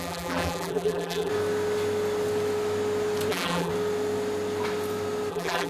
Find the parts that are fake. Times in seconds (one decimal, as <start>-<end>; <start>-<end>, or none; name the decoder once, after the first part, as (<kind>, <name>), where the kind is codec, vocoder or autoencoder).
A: 0.0-1.3 (vocoder, BigVGAN v2); 3.3-3.7; 5.3-5.7